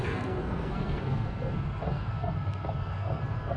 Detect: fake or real fake